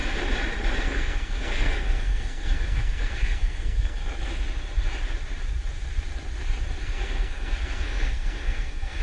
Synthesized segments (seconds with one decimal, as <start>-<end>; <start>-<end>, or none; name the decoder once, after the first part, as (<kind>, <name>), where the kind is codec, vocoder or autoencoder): 0.8-4.0 (codec, SNAC); 6.8-9.0